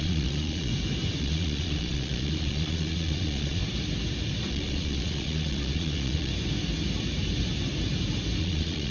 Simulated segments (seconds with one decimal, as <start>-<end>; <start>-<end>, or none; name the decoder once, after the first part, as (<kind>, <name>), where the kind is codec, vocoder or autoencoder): 0.0-0.7 (vocoder, Vocos); 1.2-3.6; 4.5-6.3; 8.4-8.9